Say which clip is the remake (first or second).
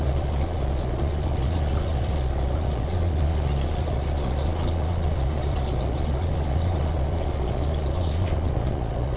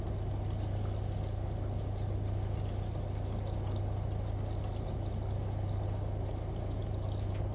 first